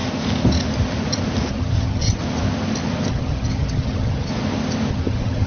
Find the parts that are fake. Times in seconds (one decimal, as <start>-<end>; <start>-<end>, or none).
1.5-2.2; 3.1-4.3; 4.9-5.5